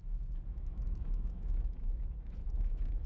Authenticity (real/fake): fake